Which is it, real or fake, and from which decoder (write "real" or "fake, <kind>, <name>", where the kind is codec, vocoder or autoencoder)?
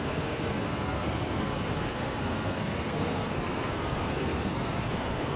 fake, codec, SNAC